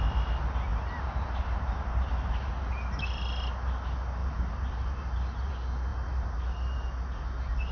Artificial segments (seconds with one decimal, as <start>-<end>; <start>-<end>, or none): 0.7-2.5; 4.2-5.5; 5.9-6.4